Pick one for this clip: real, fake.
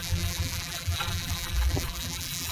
fake